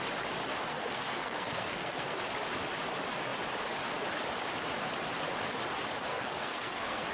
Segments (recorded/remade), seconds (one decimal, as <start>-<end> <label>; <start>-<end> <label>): 0.0-0.7 recorded; 0.7-2.2 remade; 2.2-6.1 recorded; 6.1-7.1 remade